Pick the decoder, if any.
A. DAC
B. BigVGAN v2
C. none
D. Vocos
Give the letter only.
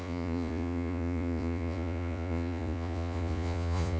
D